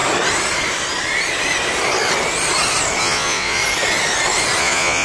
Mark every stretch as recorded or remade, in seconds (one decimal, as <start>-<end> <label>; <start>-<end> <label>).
0.0-3.0 recorded; 3.0-3.6 remade; 3.6-4.6 recorded; 4.6-5.0 remade

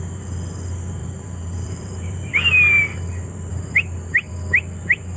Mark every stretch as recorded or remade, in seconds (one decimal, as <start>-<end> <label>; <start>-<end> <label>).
0.0-1.0 recorded; 1.0-2.3 remade; 2.3-3.5 recorded; 3.5-4.3 remade; 4.3-5.2 recorded